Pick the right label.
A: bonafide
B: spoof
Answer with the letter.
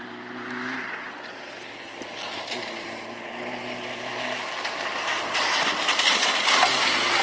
A